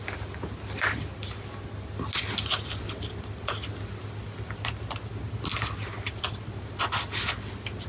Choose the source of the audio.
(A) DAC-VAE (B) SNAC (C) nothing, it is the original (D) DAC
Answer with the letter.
C